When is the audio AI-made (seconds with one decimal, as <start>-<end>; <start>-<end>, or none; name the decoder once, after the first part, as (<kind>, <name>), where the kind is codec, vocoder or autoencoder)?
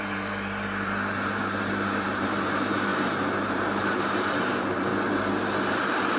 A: 0.0-4.9 (vocoder, BigVGAN v2)